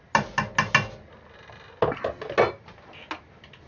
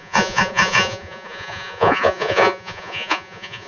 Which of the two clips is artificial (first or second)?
second